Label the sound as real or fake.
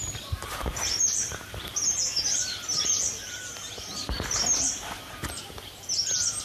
fake